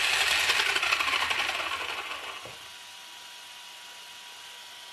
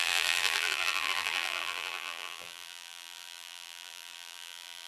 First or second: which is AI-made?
second